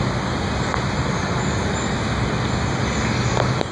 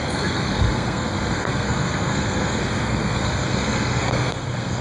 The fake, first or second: second